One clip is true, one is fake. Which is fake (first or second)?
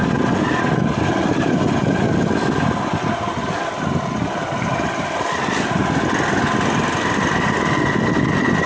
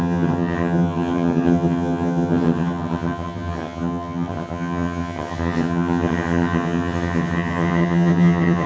second